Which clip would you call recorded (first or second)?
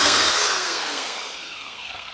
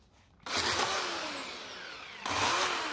second